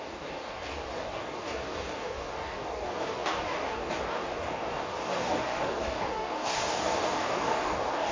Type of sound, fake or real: fake